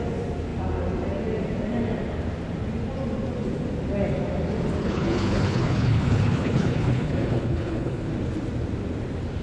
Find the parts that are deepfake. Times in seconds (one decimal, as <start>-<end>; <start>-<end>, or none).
4.8-8.1